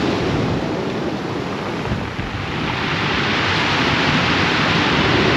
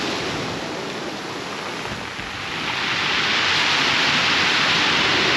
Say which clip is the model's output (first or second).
first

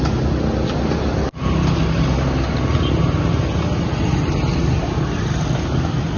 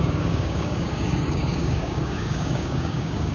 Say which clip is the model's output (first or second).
second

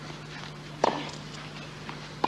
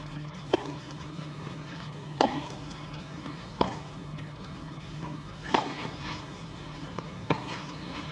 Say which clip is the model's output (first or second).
second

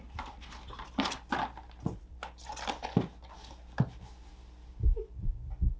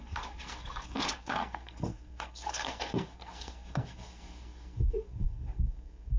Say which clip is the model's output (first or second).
second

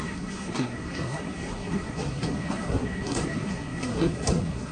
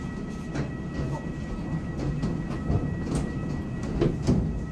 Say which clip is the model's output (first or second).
first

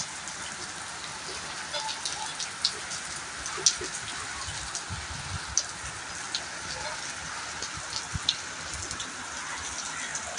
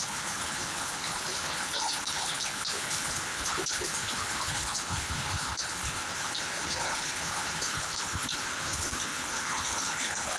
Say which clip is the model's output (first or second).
second